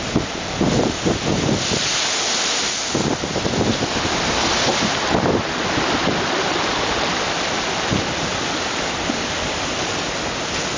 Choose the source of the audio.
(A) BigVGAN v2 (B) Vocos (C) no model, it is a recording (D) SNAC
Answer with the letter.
C